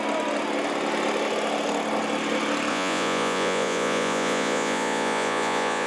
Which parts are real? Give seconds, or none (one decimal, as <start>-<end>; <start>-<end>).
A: 0.0-2.7